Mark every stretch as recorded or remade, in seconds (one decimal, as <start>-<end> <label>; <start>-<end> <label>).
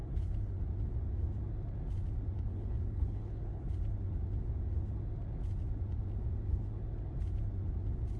0.0-0.6 remade; 0.6-2.5 recorded; 2.5-3.7 remade; 3.7-8.2 recorded